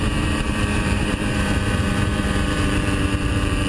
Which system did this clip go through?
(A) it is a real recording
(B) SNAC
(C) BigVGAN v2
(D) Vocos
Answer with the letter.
C